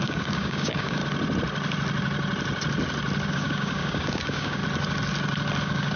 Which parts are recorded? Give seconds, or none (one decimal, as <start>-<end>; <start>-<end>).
1.0-3.3; 4.6-5.6